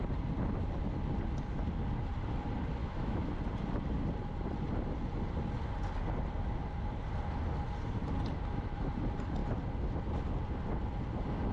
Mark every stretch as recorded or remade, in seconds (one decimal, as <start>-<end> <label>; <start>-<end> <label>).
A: 0.0-2.8 recorded; 2.8-3.3 remade; 3.3-11.5 recorded

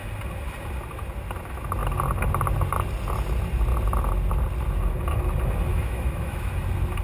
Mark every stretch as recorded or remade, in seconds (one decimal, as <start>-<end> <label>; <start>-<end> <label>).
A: 0.0-5.7 recorded; 5.7-6.5 remade; 6.5-7.0 recorded

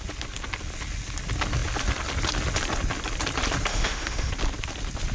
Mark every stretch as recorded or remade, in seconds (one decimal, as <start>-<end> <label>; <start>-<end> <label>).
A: 0.0-3.7 recorded; 3.7-4.3 remade; 4.3-5.1 recorded

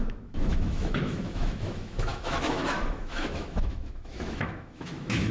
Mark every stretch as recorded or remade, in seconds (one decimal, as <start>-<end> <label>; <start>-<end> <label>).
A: 0.0-5.3 remade

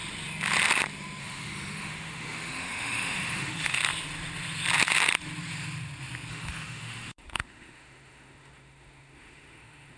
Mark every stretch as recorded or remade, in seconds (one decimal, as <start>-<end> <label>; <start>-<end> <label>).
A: 0.0-1.2 recorded; 1.2-3.8 remade; 3.8-6.3 recorded; 6.3-10.0 remade

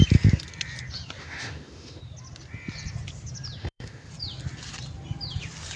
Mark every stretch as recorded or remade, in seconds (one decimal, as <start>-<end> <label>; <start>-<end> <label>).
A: 0.0-1.2 recorded; 1.2-2.0 remade; 2.0-3.6 recorded; 3.6-4.1 remade; 4.1-5.8 recorded